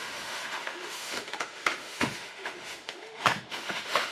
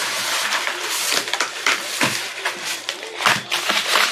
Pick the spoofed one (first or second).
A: first